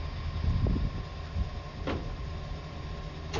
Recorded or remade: recorded